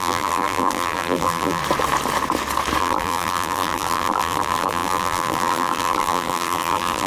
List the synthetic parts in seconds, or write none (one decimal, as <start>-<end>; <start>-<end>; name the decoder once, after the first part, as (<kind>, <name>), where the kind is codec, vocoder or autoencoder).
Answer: 0.0-1.6 (vocoder, BigVGAN v2); 2.8-7.1